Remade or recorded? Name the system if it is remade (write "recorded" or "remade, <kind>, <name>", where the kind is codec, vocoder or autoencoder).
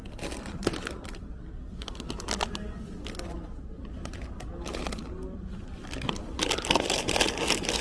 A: recorded